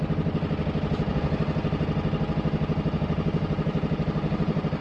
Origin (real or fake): real